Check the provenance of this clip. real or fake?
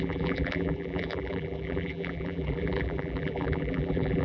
fake